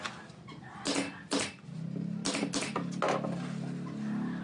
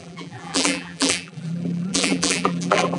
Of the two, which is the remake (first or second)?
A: second